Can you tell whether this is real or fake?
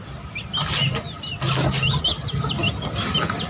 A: real